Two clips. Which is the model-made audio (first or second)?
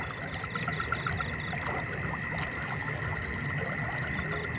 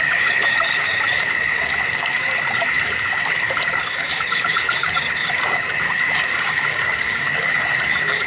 second